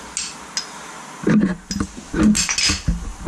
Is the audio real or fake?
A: real